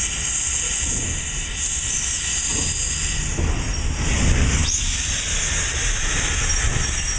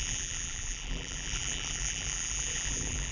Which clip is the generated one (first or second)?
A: second